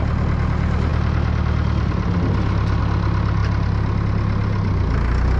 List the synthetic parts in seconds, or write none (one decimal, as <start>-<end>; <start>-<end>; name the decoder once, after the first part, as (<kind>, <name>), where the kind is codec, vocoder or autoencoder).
none

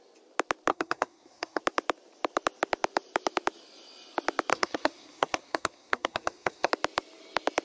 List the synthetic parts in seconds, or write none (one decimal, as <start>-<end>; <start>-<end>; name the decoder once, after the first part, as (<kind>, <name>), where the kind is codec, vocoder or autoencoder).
0.7-1.6 (codec, SNAC); 4.5-6.7

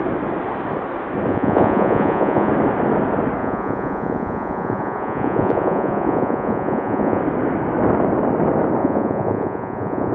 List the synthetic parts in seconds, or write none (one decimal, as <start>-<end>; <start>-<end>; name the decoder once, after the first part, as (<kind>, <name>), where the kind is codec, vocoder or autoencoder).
1.3-2.5 (vocoder, Vocos); 3.4-7.2; 8.8-10.1